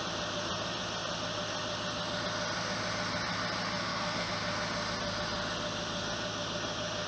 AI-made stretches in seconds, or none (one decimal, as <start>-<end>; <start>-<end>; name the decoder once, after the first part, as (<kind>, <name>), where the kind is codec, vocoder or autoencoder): 3.8-4.3 (codec, SNAC)